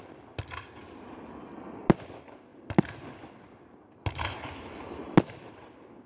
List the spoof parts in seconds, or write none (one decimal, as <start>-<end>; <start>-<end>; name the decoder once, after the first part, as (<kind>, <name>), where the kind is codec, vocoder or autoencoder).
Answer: none